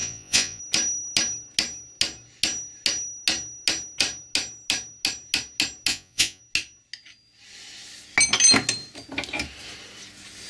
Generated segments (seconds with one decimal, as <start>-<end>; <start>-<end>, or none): 0.0-0.6; 5.9-6.4